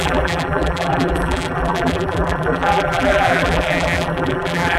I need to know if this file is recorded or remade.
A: remade